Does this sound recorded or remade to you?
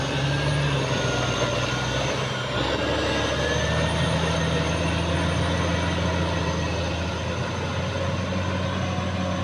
recorded